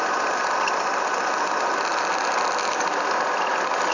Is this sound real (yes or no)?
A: yes